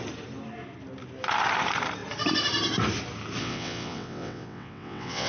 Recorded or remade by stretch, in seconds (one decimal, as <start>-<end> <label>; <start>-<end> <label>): 0.0-3.4 recorded; 3.4-5.3 remade